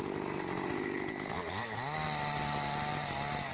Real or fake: real